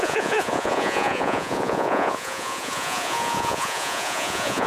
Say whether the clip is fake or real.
fake